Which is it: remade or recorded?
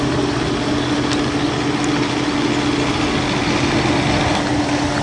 recorded